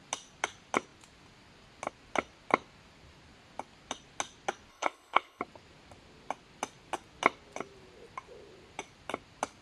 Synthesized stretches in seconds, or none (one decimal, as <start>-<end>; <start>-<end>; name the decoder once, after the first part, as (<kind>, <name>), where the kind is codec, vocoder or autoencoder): 4.7-5.4 (codec, HILCodec)

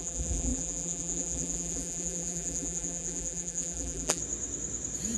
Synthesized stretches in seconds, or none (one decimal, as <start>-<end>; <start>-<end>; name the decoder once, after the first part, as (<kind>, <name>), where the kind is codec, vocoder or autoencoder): 0.0-4.2 (vocoder, BigVGAN v2)

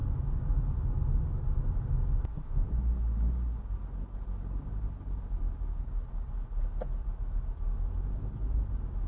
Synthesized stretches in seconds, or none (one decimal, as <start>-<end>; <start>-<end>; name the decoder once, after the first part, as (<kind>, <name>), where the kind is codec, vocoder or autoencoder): none

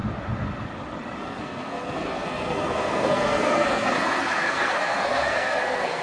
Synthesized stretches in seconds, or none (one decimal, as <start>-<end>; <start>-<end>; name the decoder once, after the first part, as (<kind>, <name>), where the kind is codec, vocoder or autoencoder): 1.2-6.0 (codec, SNAC)